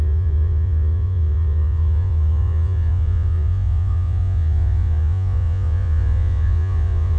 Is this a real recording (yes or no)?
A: no